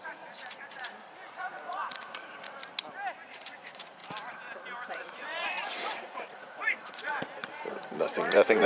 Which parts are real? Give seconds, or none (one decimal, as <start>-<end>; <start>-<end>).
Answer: 2.6-3.3; 4.0-4.9